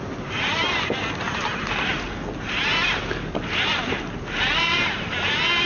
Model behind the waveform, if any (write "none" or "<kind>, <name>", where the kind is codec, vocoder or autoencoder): none